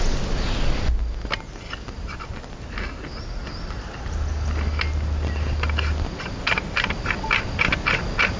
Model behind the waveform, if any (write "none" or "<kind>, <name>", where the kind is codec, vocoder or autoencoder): none